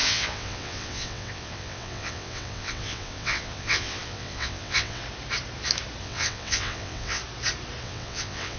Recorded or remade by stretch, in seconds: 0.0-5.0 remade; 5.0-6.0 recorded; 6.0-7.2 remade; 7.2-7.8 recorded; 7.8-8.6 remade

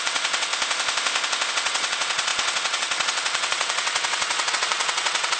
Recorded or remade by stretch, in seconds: 0.0-0.5 remade; 0.5-1.5 recorded; 1.5-5.4 remade